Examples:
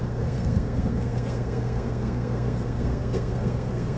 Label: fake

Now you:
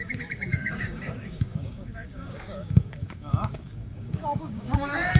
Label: fake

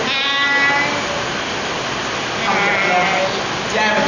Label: real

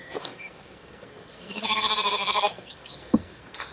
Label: fake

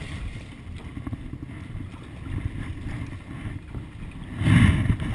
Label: real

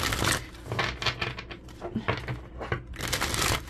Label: real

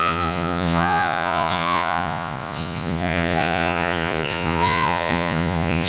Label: fake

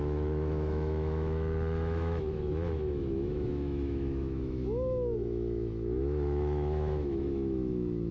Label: fake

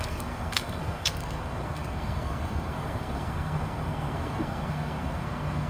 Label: fake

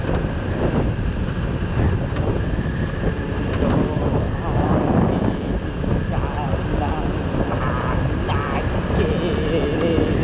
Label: real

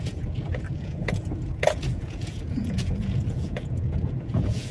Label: fake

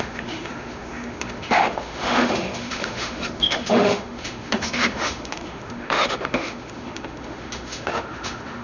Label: fake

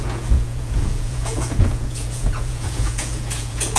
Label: fake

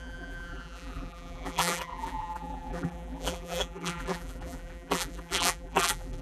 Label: fake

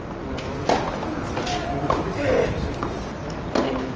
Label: real